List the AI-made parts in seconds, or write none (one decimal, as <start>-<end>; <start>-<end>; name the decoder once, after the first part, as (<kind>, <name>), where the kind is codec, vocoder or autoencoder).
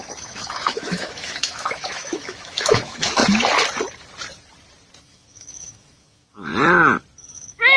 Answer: 0.0-3.2 (autoencoder, DAC-VAE); 5.0-6.5; 7.2-7.8